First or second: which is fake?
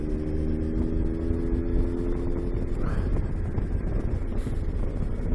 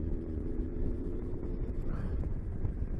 second